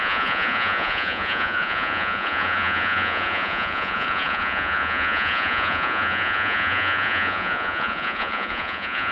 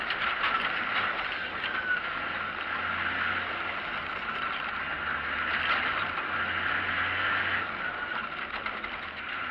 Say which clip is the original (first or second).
second